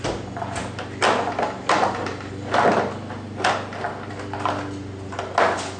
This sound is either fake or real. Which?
real